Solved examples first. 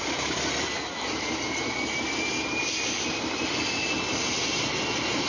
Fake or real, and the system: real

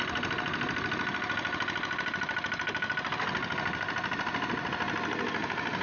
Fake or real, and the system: real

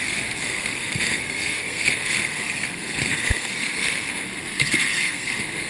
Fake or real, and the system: fake, codec, SNAC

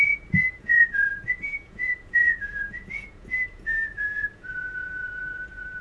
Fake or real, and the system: fake, vocoder, Vocos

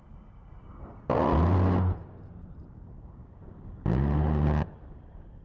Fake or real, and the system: real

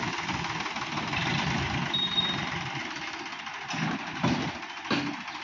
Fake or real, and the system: real